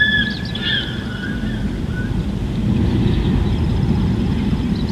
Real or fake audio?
real